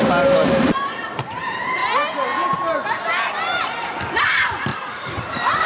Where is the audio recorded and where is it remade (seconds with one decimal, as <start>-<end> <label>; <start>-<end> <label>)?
0.0-1.8 remade; 1.8-4.1 recorded; 4.1-5.7 remade